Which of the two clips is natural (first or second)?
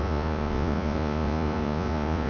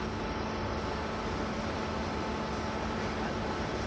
second